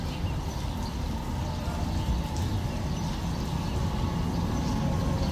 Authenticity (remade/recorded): recorded